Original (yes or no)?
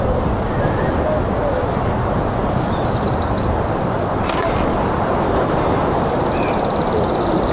yes